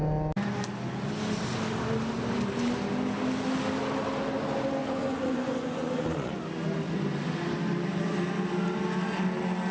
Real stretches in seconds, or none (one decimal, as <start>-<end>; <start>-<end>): 0.0-4.8; 6.4-9.7